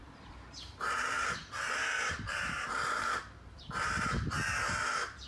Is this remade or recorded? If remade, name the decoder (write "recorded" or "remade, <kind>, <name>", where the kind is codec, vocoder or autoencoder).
remade, vocoder, BigVGAN v2